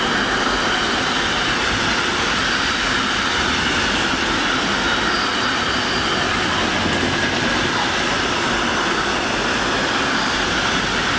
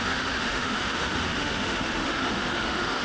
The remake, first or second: second